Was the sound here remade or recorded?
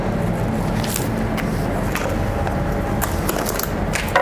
recorded